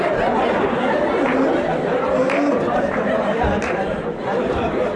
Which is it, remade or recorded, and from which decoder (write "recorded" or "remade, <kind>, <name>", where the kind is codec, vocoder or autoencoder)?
remade, vocoder, BigVGAN v2